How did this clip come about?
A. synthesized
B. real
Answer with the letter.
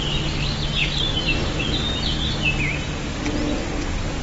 B